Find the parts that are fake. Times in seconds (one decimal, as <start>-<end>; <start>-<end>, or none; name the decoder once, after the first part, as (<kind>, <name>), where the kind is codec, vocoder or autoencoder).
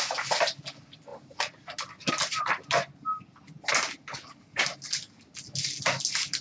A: none